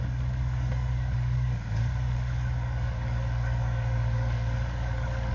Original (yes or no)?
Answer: no